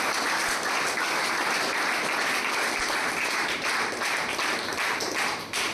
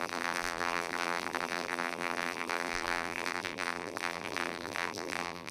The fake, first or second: second